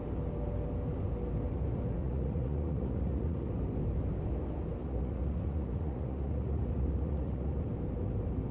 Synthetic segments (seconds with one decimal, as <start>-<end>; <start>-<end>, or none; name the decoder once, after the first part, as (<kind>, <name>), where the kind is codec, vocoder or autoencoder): 2.0-3.5 (vocoder, Vocos); 4.8-7.6